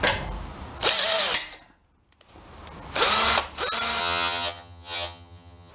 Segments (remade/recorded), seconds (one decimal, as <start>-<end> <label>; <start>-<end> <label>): 0.0-4.0 recorded; 4.0-5.7 remade

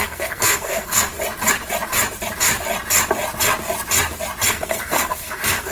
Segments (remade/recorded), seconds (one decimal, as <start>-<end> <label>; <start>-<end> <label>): 0.0-1.1 remade; 1.1-4.5 recorded; 4.5-5.7 remade

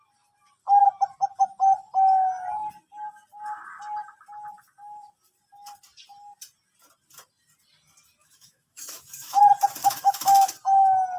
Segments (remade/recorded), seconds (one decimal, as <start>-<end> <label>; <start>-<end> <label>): 0.0-8.2 recorded; 8.2-9.4 remade; 9.4-9.8 recorded; 9.8-10.5 remade; 10.5-11.2 recorded

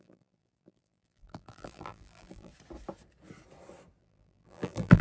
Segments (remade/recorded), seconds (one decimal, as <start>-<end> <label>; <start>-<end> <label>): 0.0-2.5 remade; 2.5-4.0 recorded; 4.0-5.0 remade